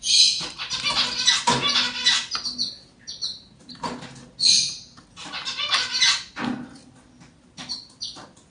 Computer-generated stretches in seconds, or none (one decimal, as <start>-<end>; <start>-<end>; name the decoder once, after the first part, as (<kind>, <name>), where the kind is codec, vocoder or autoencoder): none